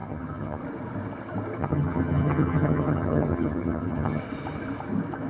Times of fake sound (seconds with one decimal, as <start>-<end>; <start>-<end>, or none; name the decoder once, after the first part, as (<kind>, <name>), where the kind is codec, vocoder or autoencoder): 0.0-0.6 (vocoder, HiFi-GAN); 1.6-4.2

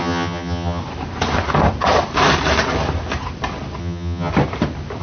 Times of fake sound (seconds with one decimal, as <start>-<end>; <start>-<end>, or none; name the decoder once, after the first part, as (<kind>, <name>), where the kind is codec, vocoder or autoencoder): 0.0-0.8 (vocoder, HiFi-GAN); 3.8-4.3

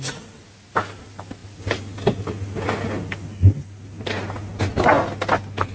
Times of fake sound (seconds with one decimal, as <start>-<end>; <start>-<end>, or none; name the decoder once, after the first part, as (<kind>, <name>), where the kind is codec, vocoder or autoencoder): none